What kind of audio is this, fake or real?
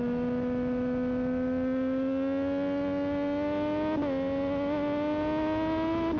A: real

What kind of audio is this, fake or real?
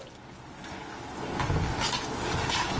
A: real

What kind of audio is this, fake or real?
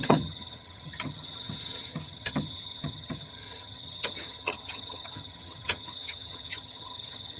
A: fake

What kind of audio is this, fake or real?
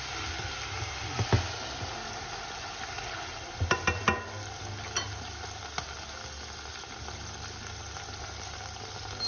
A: real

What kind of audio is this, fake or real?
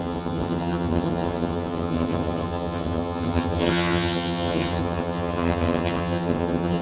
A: fake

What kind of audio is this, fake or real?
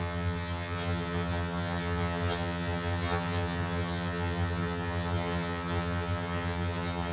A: fake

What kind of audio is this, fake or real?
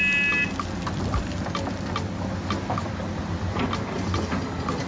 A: real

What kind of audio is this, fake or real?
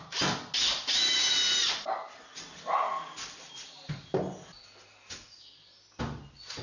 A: real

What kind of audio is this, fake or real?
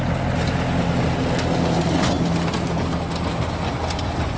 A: real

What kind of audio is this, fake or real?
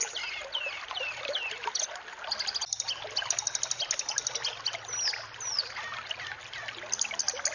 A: real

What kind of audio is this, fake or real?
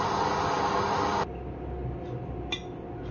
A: real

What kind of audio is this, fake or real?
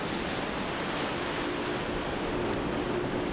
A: real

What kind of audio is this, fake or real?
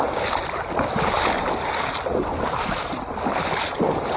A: real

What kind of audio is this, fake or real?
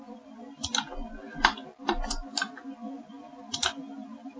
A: real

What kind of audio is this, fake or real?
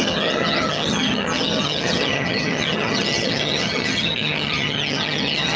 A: fake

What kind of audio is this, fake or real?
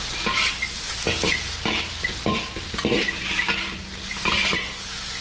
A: real